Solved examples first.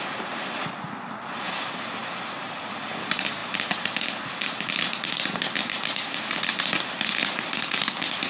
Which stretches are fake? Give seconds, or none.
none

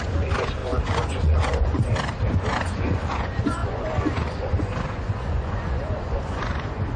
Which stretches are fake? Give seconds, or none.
0.0-1.9 (vocoder, Vocos); 2.5-7.0

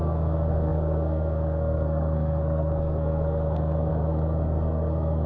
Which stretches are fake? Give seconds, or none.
0.0-5.3 (codec, SNAC)

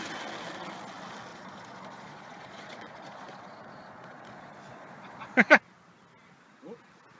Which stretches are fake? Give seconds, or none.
1.3-5.6 (vocoder, Vocos)

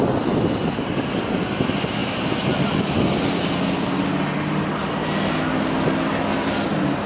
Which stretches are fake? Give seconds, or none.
none

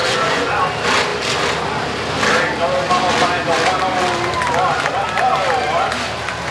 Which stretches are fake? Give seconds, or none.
0.0-0.5 (vocoder, Vocos)

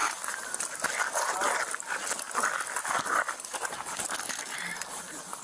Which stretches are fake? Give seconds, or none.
none